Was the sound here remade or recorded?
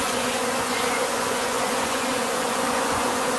remade